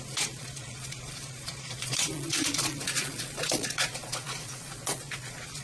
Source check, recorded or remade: remade